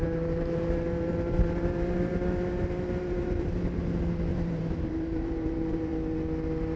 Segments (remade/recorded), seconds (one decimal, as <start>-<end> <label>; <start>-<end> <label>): 0.0-3.5 remade; 3.5-4.3 recorded; 4.3-5.9 remade; 5.9-6.8 recorded